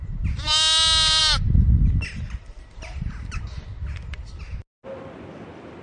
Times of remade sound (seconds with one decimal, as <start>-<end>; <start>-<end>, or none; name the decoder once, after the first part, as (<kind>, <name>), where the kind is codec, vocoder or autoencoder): none